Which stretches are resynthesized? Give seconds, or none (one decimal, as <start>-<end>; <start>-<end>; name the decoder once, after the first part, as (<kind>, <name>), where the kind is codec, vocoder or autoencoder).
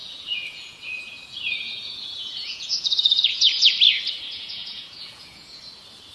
0.0-3.7 (vocoder, Vocos); 4.3-5.6